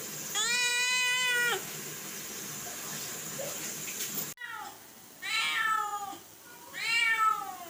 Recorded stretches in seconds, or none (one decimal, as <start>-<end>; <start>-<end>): 0.0-7.7